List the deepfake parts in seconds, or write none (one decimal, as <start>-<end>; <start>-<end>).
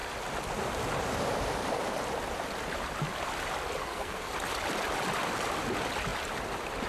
3.8-4.3